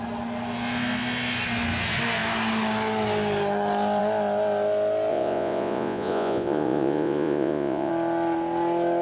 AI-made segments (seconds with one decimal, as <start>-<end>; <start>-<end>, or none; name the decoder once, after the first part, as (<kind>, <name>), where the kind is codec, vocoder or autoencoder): 5.1-7.9 (vocoder, Vocos)